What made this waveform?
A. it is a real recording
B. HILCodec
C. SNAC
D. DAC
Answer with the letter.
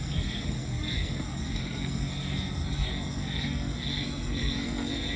C